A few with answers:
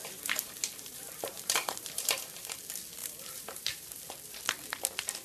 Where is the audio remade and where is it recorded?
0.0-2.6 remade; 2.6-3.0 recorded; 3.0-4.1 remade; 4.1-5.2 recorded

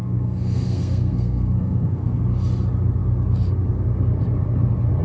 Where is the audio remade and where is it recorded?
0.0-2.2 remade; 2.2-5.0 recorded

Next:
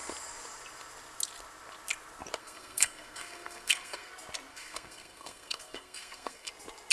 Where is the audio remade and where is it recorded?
0.0-2.4 recorded; 2.4-4.1 remade; 4.1-4.5 recorded; 4.5-6.5 remade; 6.5-6.9 recorded